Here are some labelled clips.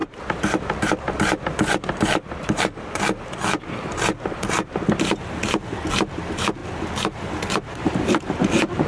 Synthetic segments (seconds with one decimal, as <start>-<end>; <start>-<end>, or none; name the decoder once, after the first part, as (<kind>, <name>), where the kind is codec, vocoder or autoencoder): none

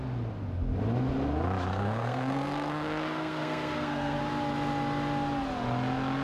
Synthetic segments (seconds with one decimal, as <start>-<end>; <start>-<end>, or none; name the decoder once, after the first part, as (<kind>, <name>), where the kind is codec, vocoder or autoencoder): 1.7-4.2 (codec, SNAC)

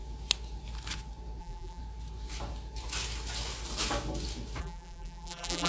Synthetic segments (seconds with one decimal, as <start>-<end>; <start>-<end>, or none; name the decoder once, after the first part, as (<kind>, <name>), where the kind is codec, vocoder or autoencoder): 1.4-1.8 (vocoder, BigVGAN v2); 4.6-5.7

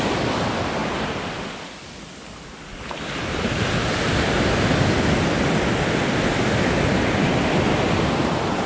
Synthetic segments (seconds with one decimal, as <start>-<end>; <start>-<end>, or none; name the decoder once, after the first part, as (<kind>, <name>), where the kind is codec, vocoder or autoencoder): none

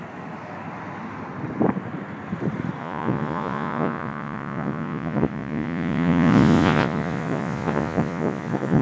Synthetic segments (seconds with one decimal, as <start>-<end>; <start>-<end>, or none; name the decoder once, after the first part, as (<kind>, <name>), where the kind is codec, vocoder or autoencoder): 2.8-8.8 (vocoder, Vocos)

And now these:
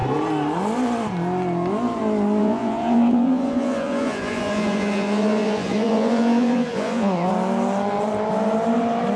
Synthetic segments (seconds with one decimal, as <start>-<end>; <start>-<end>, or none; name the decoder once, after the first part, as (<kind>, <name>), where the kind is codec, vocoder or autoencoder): 2.4-7.3 (vocoder, Vocos)

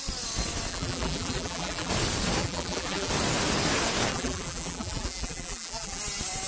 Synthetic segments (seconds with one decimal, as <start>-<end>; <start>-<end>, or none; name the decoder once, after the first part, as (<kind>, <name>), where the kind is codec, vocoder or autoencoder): 0.7-1.9 (vocoder, BigVGAN v2); 2.4-3.1; 4.1-6.0

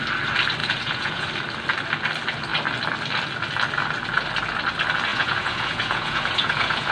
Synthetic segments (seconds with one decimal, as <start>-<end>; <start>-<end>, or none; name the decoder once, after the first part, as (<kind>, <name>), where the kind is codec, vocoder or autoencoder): 0.6-1.3 (vocoder, Vocos); 5.1-6.9